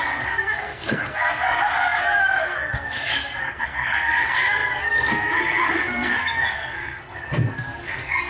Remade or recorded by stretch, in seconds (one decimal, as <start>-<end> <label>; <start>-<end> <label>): 0.0-8.3 remade